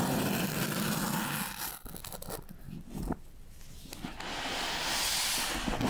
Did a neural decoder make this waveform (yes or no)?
no